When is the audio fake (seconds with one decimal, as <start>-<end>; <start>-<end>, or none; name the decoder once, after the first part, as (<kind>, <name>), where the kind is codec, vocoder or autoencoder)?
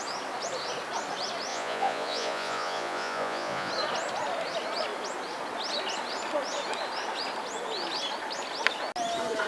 1.5-3.7 (vocoder, Vocos)